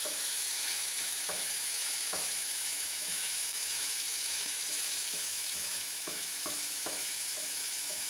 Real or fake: fake